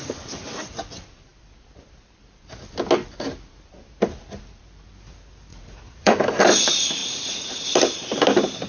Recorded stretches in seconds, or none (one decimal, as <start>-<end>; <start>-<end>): 0.0-5.5; 6.1-7.0; 7.6-8.7